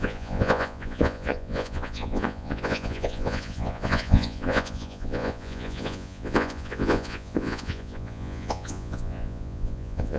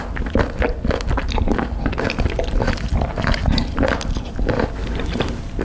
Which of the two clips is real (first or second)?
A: second